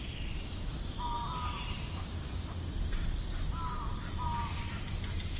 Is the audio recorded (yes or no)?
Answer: yes